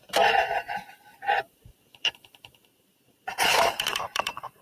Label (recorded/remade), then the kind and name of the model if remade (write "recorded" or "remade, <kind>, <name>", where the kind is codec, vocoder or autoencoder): remade, vocoder, BigVGAN v2